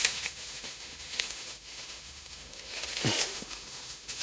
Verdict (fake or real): fake